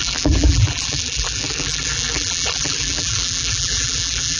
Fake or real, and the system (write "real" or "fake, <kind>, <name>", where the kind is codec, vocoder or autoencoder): fake, vocoder, BigVGAN v2